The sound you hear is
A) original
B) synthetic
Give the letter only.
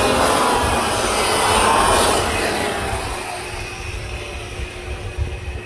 A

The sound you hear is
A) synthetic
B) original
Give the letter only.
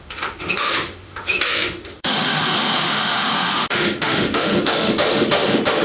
A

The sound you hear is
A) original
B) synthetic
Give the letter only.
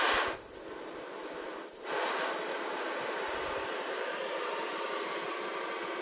A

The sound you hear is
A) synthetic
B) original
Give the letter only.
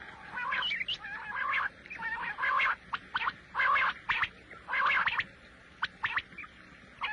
B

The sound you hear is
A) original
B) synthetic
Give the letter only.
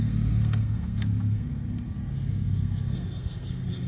B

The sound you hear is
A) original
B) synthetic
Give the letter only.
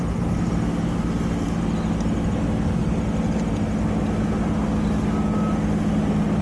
A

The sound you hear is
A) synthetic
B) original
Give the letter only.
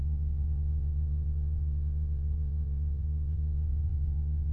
A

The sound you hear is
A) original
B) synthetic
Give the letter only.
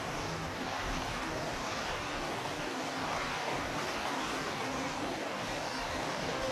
B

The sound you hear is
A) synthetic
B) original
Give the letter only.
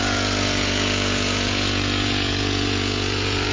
A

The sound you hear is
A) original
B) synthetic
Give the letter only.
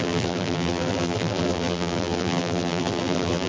B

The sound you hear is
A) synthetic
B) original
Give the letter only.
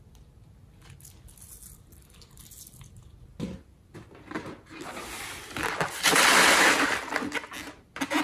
B